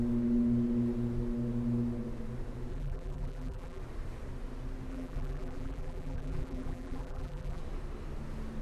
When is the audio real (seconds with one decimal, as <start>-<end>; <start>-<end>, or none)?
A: 0.0-2.7; 3.8-4.9; 7.6-8.6